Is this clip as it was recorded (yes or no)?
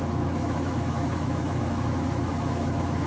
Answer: no